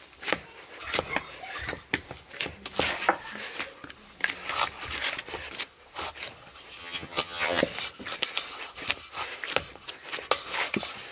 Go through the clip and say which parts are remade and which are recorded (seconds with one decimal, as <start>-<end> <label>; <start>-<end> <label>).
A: 0.0-6.8 recorded; 6.8-7.6 remade; 7.6-11.1 recorded